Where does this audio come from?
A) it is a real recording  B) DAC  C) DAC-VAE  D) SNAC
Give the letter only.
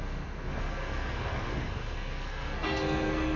D